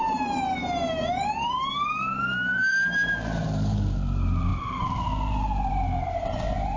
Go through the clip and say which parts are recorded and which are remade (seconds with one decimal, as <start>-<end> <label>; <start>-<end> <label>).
0.0-6.8 remade